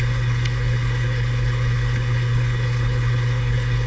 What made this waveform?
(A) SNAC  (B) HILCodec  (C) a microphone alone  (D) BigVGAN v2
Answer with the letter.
B